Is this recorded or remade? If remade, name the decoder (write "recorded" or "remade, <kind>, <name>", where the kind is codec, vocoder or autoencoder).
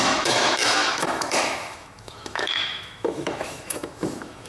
remade, autoencoder, DAC-VAE